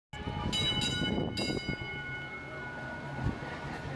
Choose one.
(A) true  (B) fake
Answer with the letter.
A